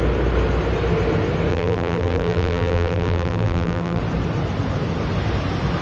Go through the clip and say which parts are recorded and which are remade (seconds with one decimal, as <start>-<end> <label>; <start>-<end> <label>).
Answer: 0.0-1.5 recorded; 1.5-4.0 remade; 4.0-5.8 recorded